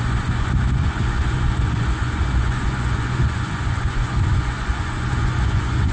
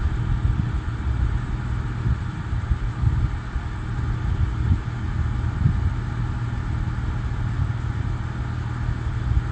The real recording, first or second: second